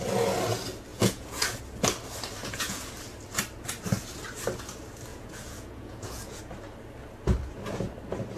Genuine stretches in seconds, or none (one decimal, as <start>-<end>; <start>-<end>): 0.0-0.9; 1.6-2.4; 2.9-5.1; 6.4-8.4